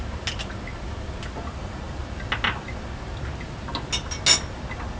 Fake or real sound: real